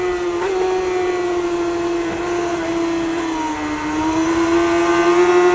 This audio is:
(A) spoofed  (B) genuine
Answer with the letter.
B